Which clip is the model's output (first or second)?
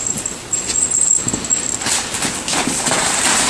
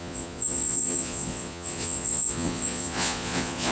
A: second